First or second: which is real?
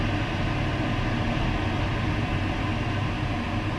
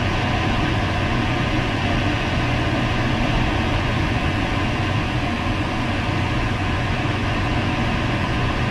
first